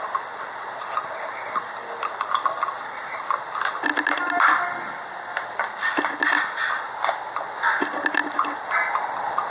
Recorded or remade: remade